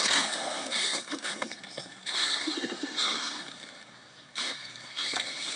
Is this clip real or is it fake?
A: fake